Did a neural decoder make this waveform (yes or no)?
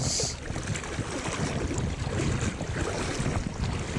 no